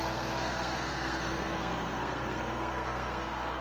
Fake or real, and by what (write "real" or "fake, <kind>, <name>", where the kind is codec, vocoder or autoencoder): fake, codec, SNAC